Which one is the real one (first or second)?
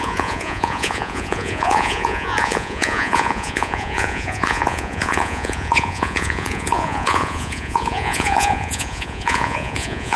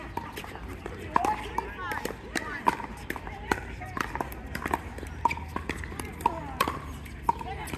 second